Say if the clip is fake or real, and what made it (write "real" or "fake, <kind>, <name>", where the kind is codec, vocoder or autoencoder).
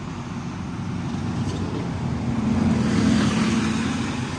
real